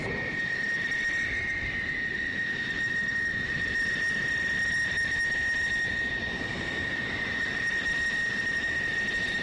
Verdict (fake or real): real